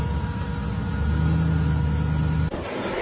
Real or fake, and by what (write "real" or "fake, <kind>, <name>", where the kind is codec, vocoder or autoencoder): real